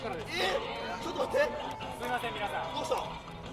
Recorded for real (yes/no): yes